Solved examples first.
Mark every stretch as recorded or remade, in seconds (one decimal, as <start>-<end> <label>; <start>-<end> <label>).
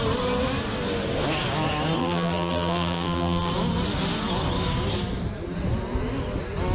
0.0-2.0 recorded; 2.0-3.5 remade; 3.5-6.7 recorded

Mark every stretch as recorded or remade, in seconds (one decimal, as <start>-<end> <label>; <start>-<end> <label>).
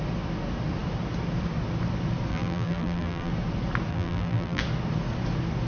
0.0-2.3 recorded; 2.3-3.3 remade; 3.3-3.9 recorded; 3.9-4.6 remade; 4.6-5.7 recorded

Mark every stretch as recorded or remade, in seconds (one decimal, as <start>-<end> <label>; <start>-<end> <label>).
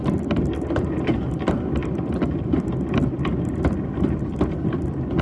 0.0-1.0 remade; 1.0-5.2 recorded